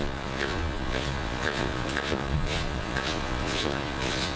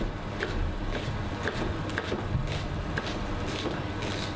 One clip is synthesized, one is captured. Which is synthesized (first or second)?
first